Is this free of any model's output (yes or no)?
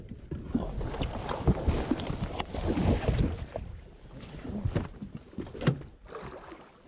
yes